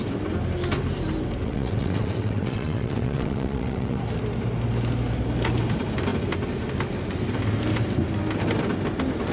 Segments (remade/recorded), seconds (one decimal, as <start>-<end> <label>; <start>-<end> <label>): 0.0-1.4 recorded; 1.4-4.0 remade; 4.0-9.3 recorded